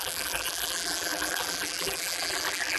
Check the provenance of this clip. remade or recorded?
remade